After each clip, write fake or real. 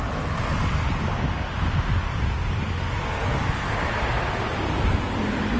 real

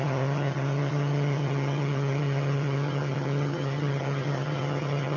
fake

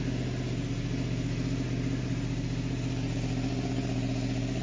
real